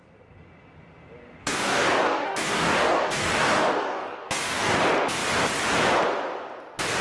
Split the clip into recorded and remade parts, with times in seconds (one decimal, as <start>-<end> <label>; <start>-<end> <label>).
0.0-1.4 recorded; 1.4-4.8 remade; 4.8-7.0 recorded